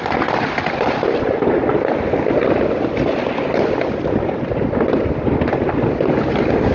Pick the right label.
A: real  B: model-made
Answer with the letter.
A